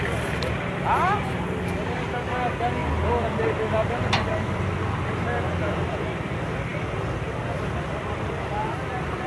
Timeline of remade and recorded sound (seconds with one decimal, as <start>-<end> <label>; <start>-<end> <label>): 0.0-3.8 recorded; 3.8-4.6 remade; 4.6-9.3 recorded